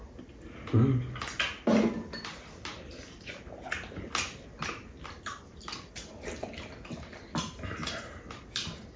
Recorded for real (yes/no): yes